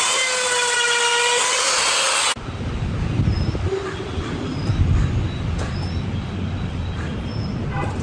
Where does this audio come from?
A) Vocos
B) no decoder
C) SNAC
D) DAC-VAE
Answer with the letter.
B